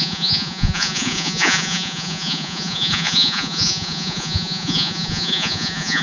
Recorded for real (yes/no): no